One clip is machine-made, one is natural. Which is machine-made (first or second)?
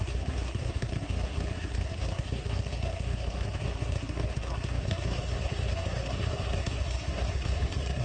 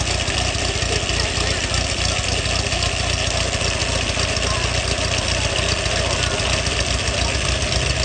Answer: first